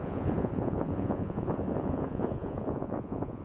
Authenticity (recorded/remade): remade